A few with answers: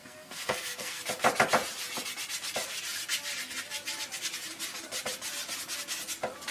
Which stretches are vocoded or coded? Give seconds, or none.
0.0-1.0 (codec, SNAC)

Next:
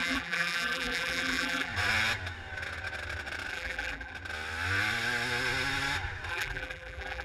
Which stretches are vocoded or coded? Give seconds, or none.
0.0-1.7 (vocoder, BigVGAN v2); 3.5-4.1; 6.3-7.2

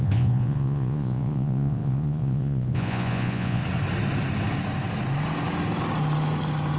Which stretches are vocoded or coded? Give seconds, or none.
0.0-3.6 (vocoder, Vocos)